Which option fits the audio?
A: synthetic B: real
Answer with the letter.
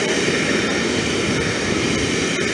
A